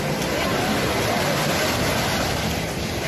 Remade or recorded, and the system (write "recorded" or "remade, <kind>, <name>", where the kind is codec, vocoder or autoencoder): recorded